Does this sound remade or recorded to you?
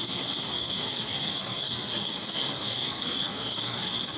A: remade